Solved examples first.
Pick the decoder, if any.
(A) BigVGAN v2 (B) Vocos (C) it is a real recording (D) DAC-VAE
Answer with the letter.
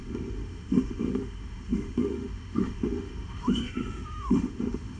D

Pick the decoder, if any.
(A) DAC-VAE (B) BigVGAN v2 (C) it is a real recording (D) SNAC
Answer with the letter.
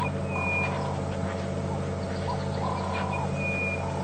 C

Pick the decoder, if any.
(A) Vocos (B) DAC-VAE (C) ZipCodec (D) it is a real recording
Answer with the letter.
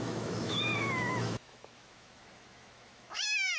B